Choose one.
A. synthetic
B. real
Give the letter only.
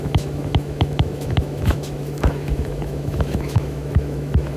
A